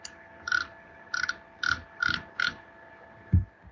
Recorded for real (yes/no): yes